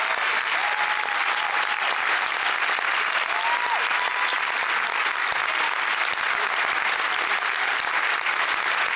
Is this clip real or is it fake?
real